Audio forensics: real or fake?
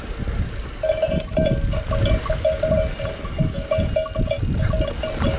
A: real